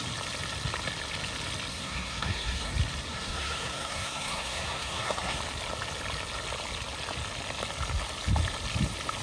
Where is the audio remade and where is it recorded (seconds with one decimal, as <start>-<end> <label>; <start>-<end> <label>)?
0.0-1.7 recorded; 1.7-2.7 remade; 2.7-3.1 recorded; 3.1-5.4 remade; 5.4-9.2 recorded